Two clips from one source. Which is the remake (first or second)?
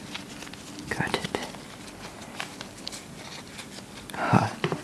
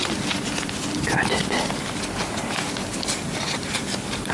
second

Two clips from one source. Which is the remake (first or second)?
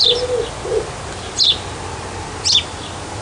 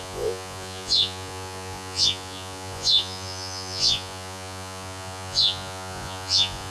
second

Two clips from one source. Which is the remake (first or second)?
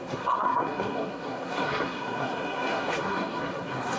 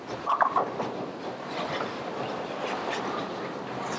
first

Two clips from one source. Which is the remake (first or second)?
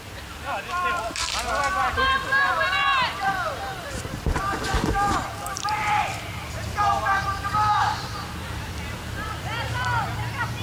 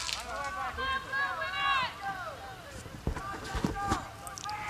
first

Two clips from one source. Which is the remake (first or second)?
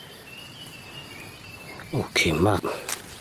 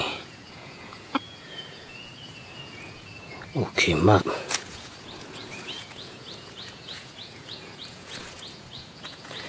second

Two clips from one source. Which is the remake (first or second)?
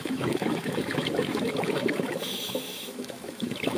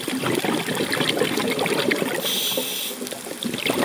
first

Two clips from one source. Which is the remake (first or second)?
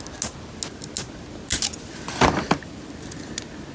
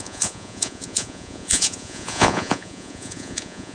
second